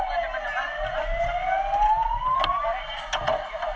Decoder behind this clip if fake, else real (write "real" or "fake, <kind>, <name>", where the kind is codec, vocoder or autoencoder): real